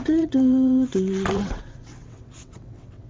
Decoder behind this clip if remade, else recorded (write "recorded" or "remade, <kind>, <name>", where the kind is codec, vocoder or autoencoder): remade, vocoder, WaveNeXt